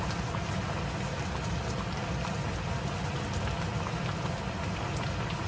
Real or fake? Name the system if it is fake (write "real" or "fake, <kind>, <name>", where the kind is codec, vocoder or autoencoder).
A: real